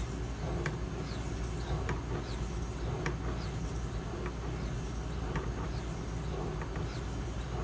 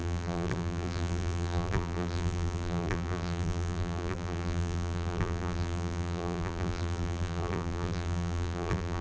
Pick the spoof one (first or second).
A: second